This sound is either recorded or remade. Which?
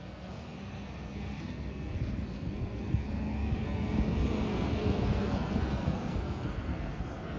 remade